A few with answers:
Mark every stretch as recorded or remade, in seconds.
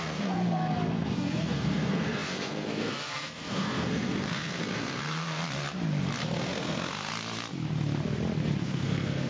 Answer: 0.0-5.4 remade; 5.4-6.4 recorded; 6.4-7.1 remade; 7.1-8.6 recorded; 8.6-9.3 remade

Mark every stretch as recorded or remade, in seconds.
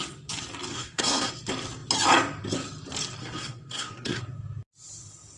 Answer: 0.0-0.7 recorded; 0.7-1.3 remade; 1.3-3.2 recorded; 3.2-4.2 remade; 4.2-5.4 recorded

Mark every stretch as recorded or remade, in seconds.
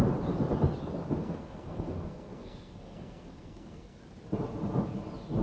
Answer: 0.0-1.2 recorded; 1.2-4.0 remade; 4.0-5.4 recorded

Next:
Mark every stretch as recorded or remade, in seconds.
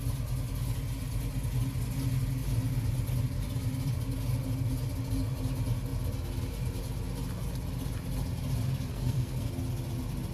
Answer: 0.0-8.9 recorded; 8.9-9.5 remade; 9.5-10.3 recorded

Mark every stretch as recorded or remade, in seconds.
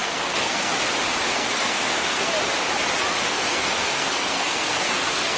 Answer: 0.0-0.8 remade; 0.8-1.3 recorded; 1.3-2.3 remade; 2.3-3.3 recorded; 3.3-5.4 remade